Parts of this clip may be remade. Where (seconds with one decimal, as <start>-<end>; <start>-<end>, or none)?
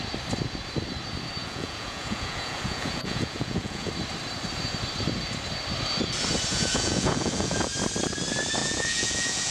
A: 1.4-3.9; 6.5-7.7; 8.6-9.5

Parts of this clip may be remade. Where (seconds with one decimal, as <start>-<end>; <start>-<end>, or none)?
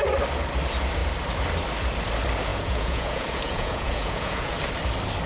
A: 2.5-4.6